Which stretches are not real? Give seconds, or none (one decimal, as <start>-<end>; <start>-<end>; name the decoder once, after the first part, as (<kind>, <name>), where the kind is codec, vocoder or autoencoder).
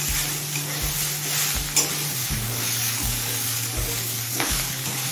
2.2-5.1 (codec, DAC)